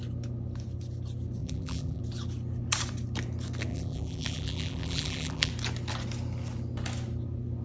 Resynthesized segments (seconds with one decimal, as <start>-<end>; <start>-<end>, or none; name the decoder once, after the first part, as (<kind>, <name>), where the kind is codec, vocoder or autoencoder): 1.4-2.0 (vocoder, BigVGAN v2); 3.7-5.5

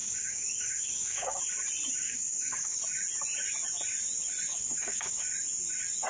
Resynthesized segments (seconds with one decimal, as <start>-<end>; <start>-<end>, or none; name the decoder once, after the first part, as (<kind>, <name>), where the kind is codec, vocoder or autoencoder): 0.0-1.4 (codec, DAC); 2.0-2.8; 4.5-5.2